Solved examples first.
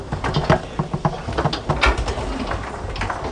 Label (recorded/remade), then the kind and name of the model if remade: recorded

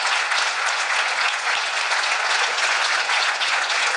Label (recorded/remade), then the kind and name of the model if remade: remade, vocoder, Vocos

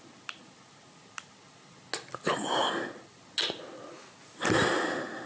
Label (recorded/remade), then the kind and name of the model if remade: recorded